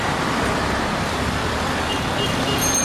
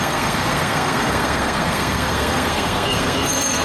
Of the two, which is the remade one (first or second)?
second